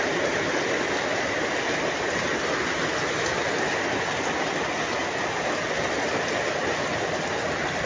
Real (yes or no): yes